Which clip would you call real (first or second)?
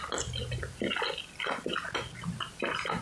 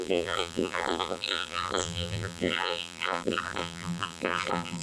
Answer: first